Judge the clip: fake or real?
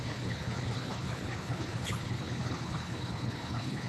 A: fake